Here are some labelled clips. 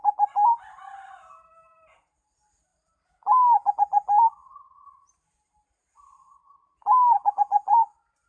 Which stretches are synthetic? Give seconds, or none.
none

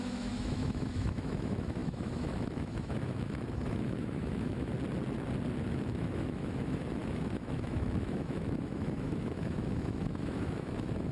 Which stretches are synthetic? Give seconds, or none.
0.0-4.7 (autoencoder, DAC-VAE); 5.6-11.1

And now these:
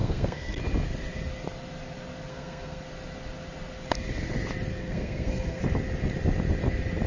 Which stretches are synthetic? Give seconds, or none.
0.0-0.6 (codec, SNAC); 2.3-2.8; 4.8-5.6

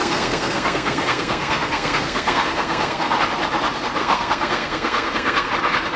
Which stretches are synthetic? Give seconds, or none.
0.0-3.1 (codec, SNAC); 4.0-5.5